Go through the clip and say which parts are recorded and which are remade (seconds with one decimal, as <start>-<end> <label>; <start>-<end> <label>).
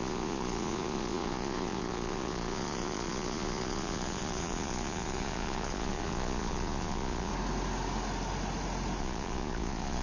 0.0-7.3 remade; 7.3-9.0 recorded; 9.0-10.0 remade